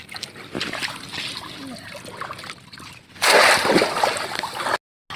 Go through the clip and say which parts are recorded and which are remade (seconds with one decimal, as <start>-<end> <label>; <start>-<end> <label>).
0.0-5.2 recorded